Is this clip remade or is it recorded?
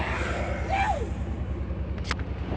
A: recorded